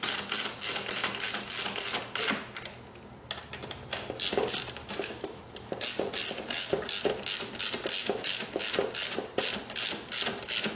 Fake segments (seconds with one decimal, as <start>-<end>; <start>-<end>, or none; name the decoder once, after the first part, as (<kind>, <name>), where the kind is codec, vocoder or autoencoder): 4.8-5.4 (autoencoder, DAC-VAE); 8.0-8.6